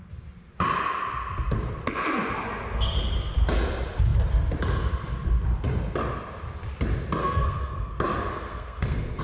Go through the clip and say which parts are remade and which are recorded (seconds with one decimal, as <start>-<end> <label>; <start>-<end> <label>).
0.0-7.2 recorded; 7.2-7.9 remade; 7.9-8.3 recorded; 8.3-9.2 remade